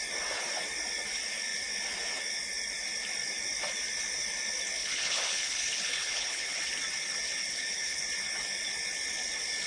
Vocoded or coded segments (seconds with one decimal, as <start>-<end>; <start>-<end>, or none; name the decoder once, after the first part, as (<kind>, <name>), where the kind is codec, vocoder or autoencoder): 4.8-6.6 (codec, HILCodec); 7.5-8.0